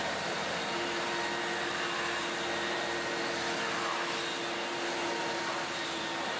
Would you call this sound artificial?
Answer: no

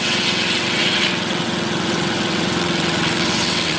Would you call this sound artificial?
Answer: yes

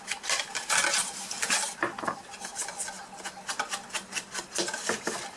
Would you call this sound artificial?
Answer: no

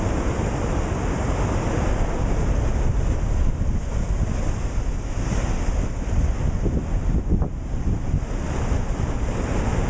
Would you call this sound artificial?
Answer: no